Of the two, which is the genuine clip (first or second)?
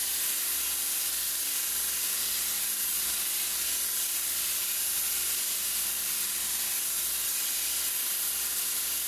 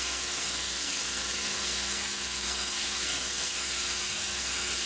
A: first